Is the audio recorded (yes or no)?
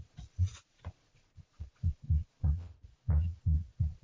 no